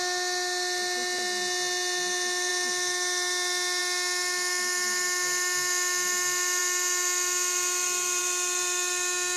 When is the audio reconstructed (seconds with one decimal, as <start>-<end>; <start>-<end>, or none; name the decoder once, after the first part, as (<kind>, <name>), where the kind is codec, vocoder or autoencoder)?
none